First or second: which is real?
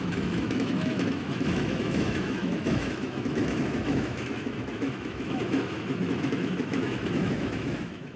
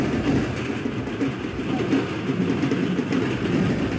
second